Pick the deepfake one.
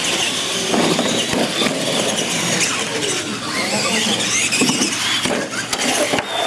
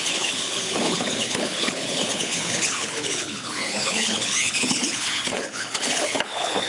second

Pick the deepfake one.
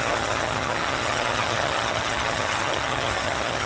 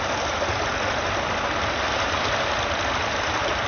first